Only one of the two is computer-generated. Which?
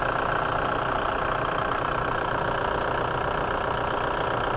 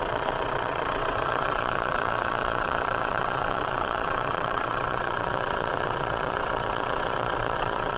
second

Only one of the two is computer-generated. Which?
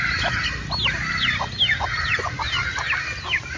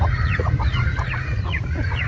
second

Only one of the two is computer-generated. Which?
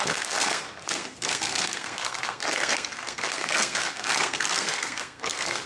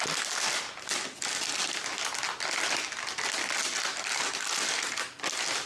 first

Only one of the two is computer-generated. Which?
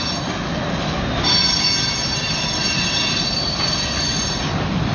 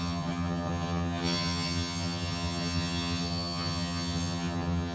second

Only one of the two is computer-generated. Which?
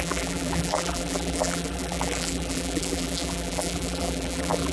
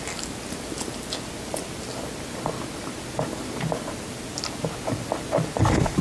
first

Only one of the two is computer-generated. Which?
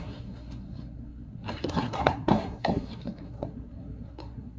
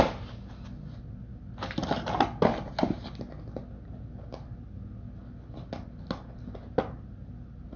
first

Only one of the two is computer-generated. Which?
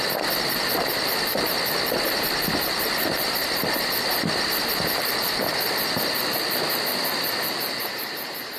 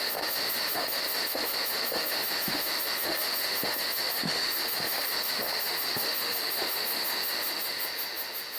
second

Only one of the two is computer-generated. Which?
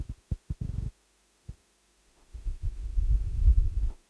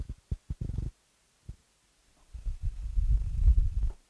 first